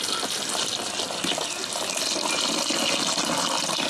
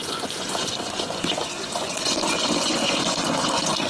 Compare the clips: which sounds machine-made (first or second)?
second